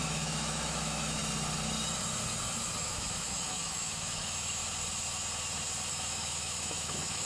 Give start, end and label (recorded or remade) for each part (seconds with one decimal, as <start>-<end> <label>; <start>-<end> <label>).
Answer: 0.0-1.2 remade; 1.2-2.8 recorded; 2.8-4.6 remade; 4.6-5.9 recorded; 5.9-7.3 remade